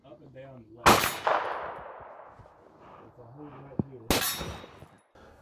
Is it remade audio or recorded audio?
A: recorded